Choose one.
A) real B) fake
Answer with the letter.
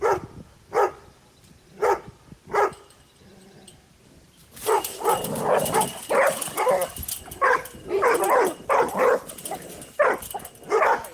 A